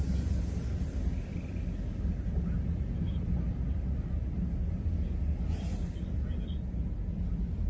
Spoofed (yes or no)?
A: no